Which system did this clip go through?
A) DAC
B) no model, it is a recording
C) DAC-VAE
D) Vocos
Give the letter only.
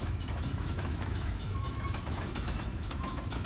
C